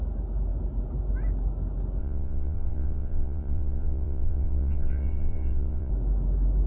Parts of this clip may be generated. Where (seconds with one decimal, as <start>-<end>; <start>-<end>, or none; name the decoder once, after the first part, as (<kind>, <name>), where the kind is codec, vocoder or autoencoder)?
2.0-5.9 (vocoder, WaveNeXt)